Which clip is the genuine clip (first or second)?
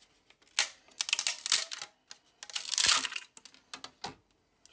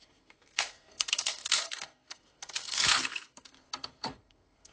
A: first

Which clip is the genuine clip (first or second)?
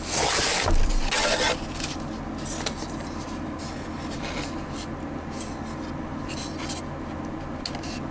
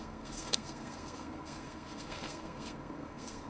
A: first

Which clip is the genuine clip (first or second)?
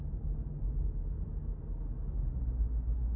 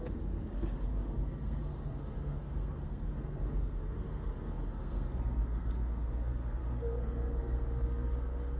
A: first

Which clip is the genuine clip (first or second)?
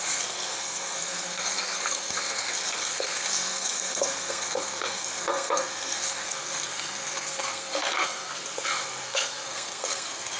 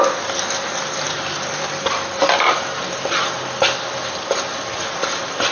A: second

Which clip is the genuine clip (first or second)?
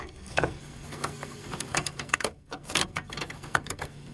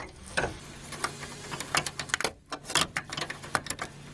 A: second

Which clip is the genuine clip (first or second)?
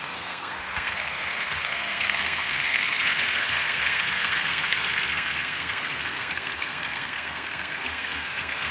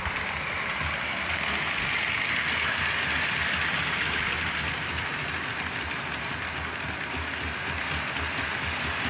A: second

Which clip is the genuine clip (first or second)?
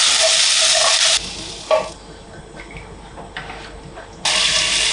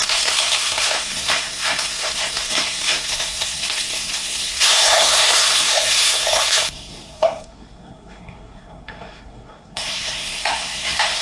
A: first